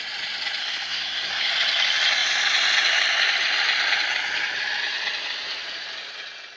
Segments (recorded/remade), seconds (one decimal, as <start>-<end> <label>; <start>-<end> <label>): 0.0-0.6 recorded; 0.6-1.5 remade; 1.5-6.6 recorded

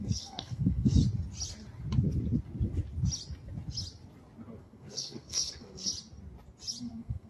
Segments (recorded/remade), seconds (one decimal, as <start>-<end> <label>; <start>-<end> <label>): 0.0-1.0 remade; 1.0-4.6 recorded; 4.6-5.9 remade; 5.9-6.8 recorded; 6.8-7.3 remade

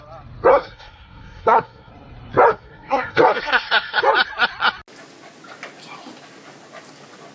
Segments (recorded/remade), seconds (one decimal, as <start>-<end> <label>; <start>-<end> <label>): 0.0-0.5 recorded; 0.5-1.9 remade; 1.9-2.5 recorded; 2.5-4.0 remade; 4.0-7.3 recorded

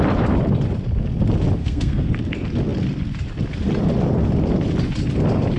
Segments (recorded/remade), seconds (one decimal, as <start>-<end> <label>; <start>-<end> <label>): 0.0-1.6 recorded; 1.6-2.1 remade; 2.1-5.6 recorded